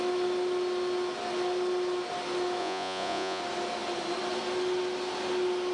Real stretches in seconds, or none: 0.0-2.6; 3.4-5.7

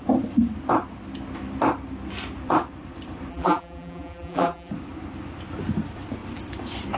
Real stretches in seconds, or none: 0.0-3.3; 4.7-7.0

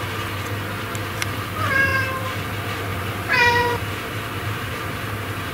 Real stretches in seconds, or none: 0.0-2.9

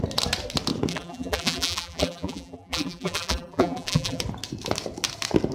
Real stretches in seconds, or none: 0.0-0.9; 4.2-5.5